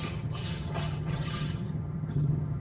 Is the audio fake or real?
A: fake